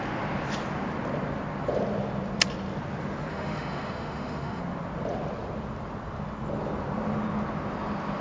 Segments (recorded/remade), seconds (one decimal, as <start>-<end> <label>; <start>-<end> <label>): 0.0-3.3 recorded; 3.3-4.6 remade; 4.6-8.2 recorded